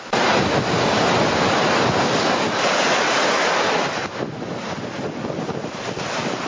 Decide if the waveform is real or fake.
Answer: real